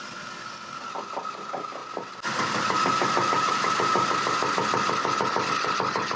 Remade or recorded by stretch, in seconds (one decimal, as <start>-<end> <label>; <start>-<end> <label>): 0.0-6.2 recorded